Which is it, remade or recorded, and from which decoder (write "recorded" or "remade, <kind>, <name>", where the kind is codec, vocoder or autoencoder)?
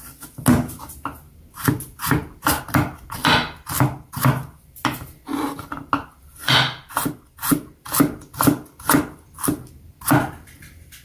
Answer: recorded